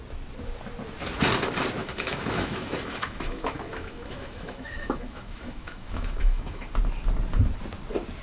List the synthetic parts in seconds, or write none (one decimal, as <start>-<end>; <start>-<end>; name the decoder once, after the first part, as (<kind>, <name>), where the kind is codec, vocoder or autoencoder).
1.8-6.7 (autoencoder, DAC-VAE)